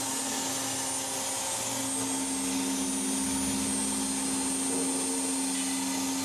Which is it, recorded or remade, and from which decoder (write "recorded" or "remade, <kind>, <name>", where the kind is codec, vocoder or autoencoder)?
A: recorded